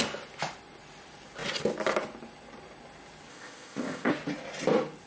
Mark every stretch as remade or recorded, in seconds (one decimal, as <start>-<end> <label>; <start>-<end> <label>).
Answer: 0.0-3.3 recorded; 3.3-4.1 remade; 4.1-5.1 recorded